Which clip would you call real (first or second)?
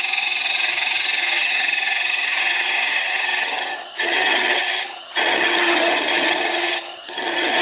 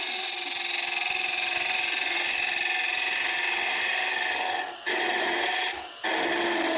second